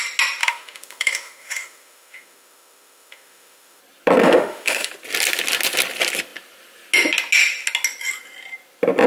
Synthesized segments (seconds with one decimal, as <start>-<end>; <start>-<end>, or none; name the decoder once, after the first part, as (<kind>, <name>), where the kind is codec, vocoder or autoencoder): 0.4-3.8 (autoencoder, DAC-VAE); 4.2-4.9